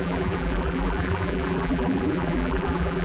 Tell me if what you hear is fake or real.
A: fake